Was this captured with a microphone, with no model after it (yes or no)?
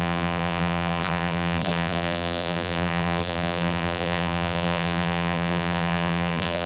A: no